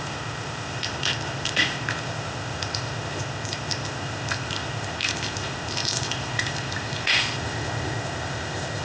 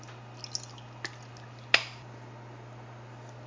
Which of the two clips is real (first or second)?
second